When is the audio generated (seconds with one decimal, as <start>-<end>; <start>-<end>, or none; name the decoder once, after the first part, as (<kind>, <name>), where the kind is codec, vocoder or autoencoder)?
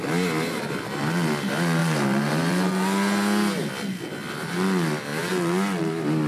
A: 1.8-2.7 (vocoder, BigVGAN v2)